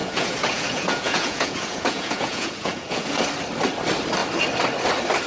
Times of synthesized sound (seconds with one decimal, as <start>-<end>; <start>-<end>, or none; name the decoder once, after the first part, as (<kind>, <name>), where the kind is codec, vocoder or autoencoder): 0.0-3.2 (vocoder, Vocos)